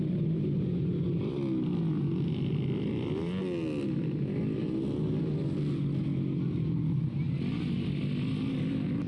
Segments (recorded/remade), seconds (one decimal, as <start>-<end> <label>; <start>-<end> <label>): 0.0-9.1 recorded